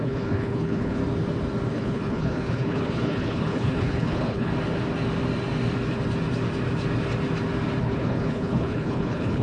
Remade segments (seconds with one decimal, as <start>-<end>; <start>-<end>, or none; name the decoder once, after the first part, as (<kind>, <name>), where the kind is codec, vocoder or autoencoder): 0.0-1.0 (codec, HILCodec); 1.7-4.5; 7.8-9.4